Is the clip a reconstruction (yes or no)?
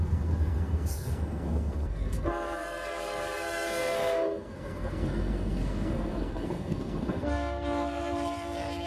yes